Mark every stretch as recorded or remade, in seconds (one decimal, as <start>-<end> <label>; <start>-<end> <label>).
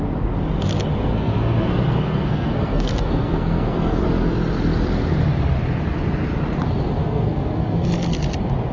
0.0-0.9 recorded; 0.9-4.0 remade; 4.0-7.0 recorded; 7.0-8.2 remade; 8.2-8.7 recorded